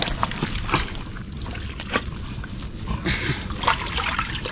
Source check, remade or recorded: recorded